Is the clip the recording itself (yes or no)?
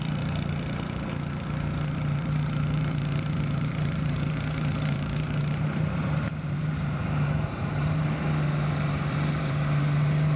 no